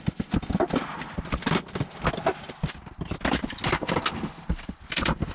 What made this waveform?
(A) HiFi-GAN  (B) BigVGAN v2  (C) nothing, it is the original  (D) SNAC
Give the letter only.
C